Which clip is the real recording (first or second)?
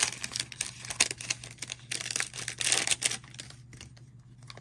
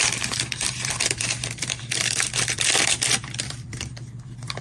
first